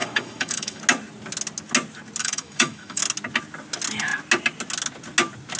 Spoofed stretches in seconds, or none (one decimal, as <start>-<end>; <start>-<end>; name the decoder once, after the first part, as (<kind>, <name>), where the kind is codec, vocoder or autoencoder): 0.0-0.8 (autoencoder, DAC-VAE); 2.2-3.0